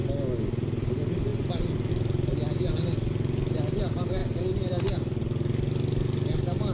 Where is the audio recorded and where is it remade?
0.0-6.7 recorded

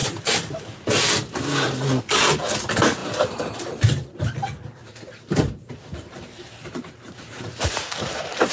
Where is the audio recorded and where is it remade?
0.0-0.9 remade; 0.9-3.0 recorded; 3.0-3.7 remade; 3.7-4.8 recorded; 4.8-8.5 remade